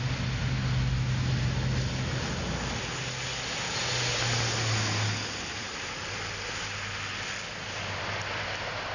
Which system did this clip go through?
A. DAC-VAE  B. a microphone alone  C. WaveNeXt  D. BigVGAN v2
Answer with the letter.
B